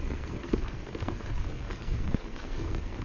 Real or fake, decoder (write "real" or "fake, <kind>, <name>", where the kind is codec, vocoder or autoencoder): fake, codec, SNAC